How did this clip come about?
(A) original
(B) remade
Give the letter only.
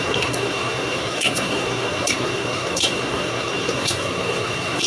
B